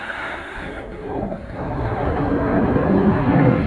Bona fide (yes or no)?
no